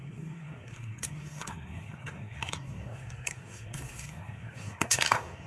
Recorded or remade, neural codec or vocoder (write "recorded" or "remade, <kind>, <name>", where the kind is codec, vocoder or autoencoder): remade, codec, SNAC